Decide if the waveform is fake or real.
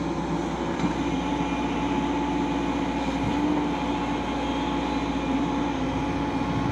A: real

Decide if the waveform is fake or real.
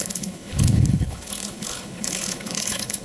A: fake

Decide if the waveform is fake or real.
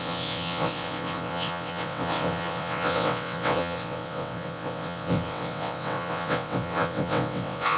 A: fake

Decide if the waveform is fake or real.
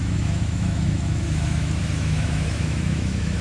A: fake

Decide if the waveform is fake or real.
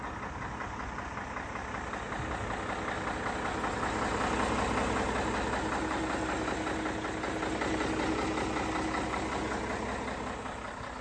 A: real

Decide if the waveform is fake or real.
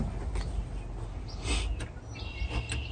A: real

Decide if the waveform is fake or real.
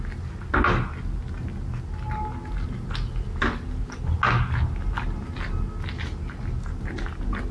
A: real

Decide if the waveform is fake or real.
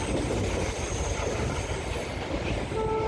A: real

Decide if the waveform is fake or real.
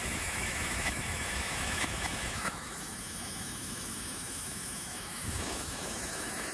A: fake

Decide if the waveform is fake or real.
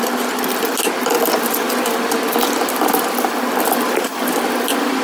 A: real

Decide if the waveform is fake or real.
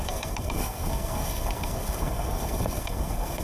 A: fake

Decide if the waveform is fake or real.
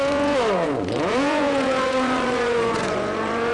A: fake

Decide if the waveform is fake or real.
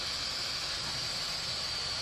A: real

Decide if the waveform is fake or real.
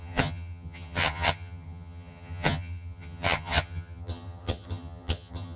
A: fake